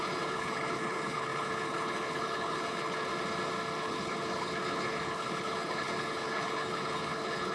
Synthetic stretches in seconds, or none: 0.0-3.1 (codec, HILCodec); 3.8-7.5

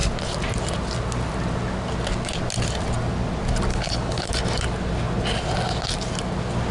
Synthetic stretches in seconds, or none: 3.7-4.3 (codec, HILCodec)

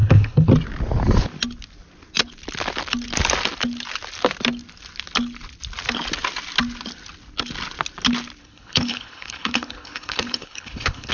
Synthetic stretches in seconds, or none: 0.0-0.5 (codec, HILCodec); 8.4-11.1